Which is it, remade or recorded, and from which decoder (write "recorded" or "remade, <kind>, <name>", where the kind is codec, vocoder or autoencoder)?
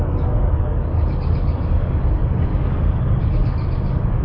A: remade, codec, DAC